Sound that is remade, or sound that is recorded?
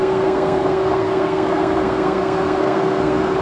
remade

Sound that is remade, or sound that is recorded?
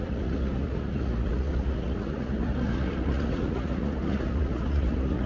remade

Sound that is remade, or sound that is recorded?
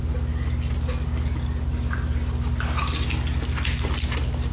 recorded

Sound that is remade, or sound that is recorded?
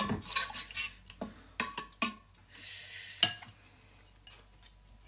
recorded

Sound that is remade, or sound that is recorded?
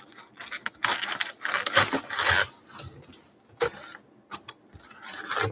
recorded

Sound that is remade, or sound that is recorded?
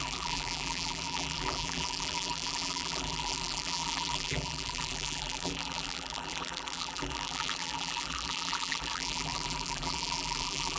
remade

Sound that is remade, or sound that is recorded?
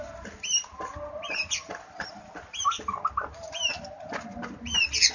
recorded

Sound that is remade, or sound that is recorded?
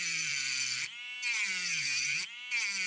remade